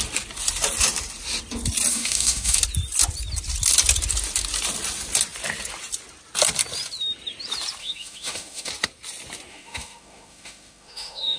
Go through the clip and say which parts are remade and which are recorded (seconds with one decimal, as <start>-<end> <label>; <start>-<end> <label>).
0.0-1.9 recorded; 1.9-2.6 remade; 2.6-7.8 recorded; 7.8-8.7 remade; 8.7-9.5 recorded; 9.5-11.4 remade